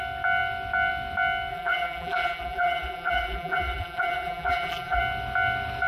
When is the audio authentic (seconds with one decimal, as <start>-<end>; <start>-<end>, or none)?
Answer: 0.0-1.5; 5.0-5.9